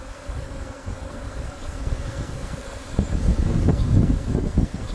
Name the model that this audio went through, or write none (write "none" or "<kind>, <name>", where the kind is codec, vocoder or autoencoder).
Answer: codec, SNAC